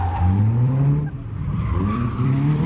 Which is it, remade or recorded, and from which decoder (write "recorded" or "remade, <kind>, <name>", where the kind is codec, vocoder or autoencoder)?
remade, vocoder, BigVGAN v2